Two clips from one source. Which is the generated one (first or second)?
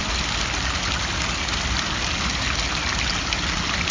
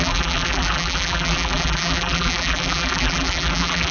second